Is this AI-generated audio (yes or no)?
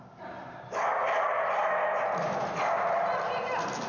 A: no